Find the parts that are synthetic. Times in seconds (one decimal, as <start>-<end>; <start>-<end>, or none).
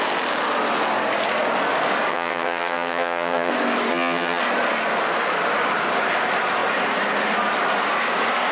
2.1-3.5; 3.9-4.4